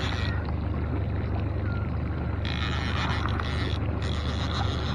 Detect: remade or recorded recorded